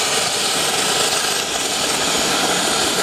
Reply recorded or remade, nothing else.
recorded